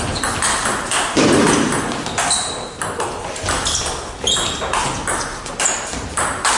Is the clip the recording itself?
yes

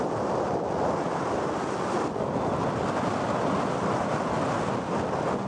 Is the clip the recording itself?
yes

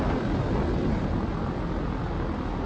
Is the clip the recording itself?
yes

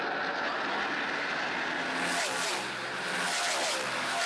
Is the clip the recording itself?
yes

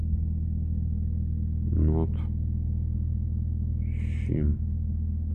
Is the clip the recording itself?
yes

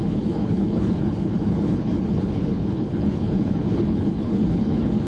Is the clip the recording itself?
no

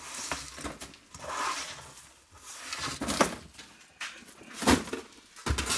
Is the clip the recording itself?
yes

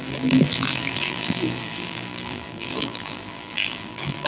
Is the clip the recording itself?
no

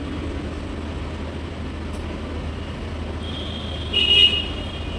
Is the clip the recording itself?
yes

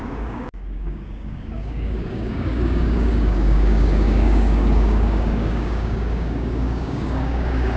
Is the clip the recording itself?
no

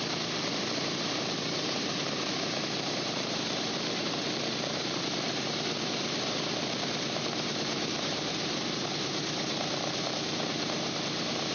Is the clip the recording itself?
no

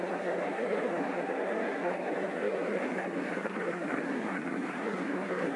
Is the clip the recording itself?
no